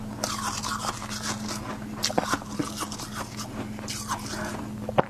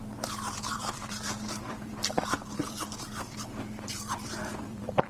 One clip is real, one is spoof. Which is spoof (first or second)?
second